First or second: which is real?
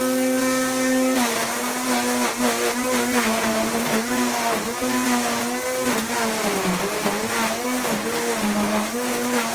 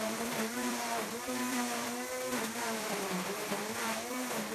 first